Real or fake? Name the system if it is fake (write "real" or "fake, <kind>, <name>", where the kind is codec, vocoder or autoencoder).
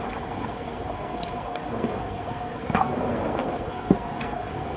fake, codec, SNAC